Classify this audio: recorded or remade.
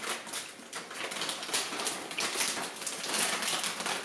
recorded